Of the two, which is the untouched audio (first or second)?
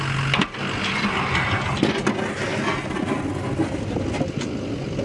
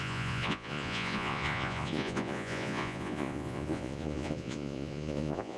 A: first